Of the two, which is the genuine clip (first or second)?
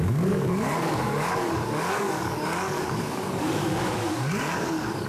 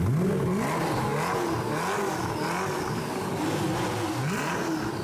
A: second